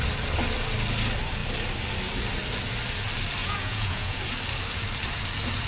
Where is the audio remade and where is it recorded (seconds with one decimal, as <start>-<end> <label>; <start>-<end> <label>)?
0.0-3.4 recorded; 3.4-4.2 remade; 4.2-5.7 recorded